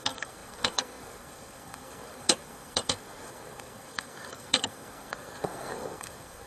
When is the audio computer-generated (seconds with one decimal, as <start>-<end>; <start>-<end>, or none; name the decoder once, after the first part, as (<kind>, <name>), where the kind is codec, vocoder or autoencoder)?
0.0-6.5 (codec, SNAC)